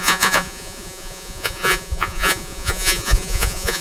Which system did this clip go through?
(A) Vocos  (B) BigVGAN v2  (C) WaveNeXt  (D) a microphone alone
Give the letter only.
A